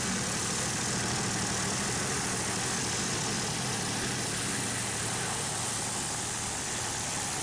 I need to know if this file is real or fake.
real